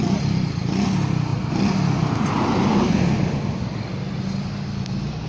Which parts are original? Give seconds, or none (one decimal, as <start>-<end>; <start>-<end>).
0.0-5.3